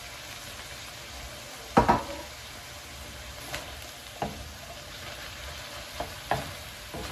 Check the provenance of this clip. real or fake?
real